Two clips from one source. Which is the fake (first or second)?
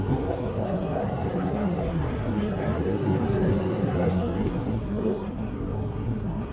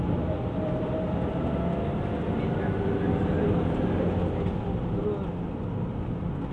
first